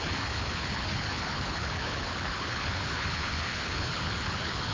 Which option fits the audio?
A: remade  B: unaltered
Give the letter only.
A